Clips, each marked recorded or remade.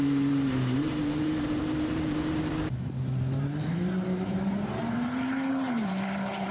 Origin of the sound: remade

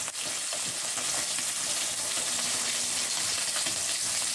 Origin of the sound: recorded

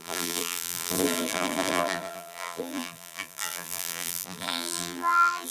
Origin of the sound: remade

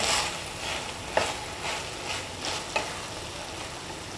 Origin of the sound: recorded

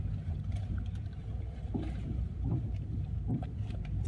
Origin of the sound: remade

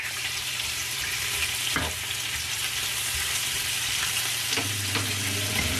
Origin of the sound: remade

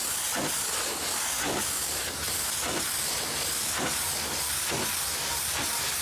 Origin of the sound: recorded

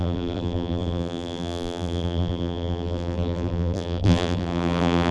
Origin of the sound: remade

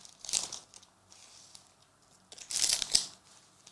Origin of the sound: recorded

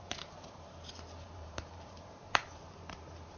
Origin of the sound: remade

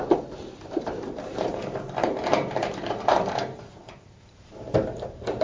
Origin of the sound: remade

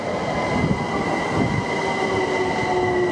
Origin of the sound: recorded